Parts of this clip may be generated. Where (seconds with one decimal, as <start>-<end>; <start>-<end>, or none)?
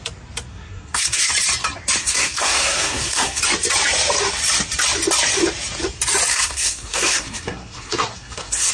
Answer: 0.5-1.3; 2.0-3.4; 6.3-8.7